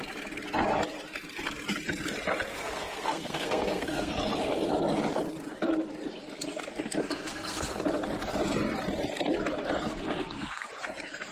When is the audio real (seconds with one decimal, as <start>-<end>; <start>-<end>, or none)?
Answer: 0.0-2.5; 4.1-7.0; 7.7-9.9; 10.7-11.3